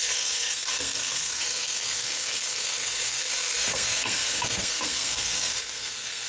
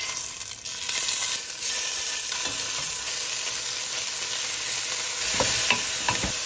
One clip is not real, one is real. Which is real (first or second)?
second